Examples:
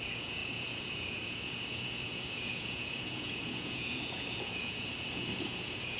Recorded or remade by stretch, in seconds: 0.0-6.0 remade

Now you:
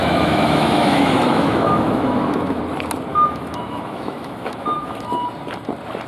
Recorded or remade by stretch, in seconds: 0.0-2.6 remade; 2.6-3.1 recorded; 3.1-5.0 remade; 5.0-6.1 recorded

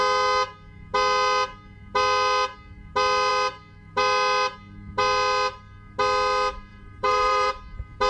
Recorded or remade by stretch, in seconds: 0.0-6.7 recorded; 6.7-7.5 remade; 7.5-8.1 recorded

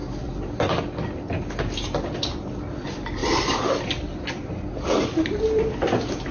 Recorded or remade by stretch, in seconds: 0.0-3.2 recorded; 3.2-6.3 remade